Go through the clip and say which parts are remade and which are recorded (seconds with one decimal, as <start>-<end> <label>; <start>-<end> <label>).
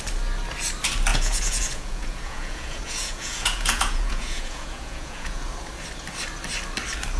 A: 0.0-1.1 recorded; 1.1-5.4 remade; 5.4-7.2 recorded